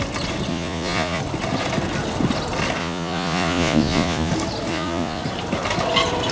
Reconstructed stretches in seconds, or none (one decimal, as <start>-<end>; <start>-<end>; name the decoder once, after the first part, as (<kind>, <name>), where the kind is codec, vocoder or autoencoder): 0.5-1.2 (vocoder, Vocos); 2.8-4.3; 4.7-5.2